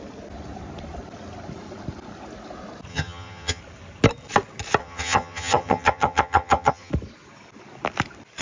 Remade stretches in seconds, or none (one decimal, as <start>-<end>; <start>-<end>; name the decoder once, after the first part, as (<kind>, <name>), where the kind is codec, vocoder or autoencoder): 2.9-3.6 (vocoder, HiFi-GAN); 4.8-6.9